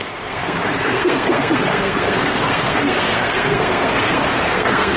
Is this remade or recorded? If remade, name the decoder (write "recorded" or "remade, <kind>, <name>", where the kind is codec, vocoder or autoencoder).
remade, codec, SNAC